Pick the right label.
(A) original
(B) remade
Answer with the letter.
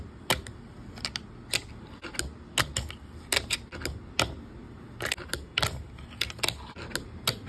A